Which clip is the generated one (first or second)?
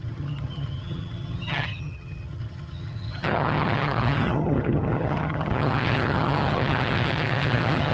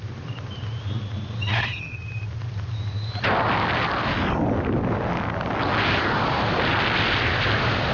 first